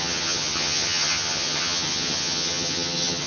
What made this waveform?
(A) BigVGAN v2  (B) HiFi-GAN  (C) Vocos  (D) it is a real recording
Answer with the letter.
B